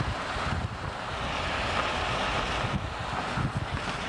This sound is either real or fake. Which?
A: real